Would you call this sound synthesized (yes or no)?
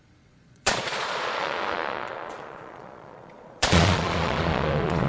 yes